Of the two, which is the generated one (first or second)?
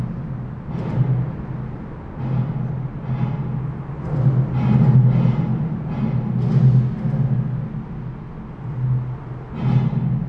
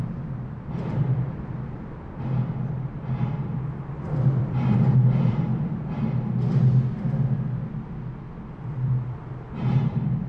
second